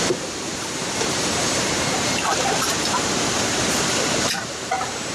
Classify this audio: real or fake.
fake